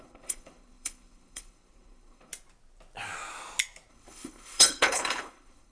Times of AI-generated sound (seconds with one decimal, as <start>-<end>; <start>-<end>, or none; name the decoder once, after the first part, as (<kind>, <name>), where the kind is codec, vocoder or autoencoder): 0.0-2.3 (codec, HILCodec); 3.9-5.7